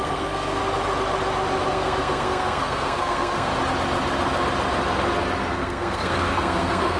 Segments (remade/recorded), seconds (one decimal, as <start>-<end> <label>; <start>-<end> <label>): 0.0-0.6 remade; 0.6-1.7 recorded; 1.7-3.5 remade; 3.5-5.5 recorded; 5.5-7.0 remade